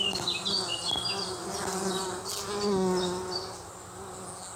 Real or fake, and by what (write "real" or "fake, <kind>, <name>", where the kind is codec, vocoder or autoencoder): real